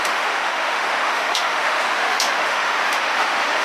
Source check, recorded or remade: remade